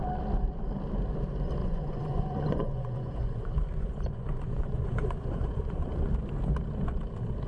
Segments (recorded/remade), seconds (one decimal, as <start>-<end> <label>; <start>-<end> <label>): 0.0-1.6 recorded; 1.6-6.1 remade; 6.1-7.5 recorded